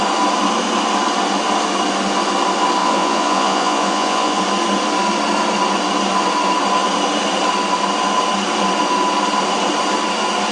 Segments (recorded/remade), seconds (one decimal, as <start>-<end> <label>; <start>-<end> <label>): 0.0-2.8 recorded; 2.8-4.4 remade; 4.4-10.5 recorded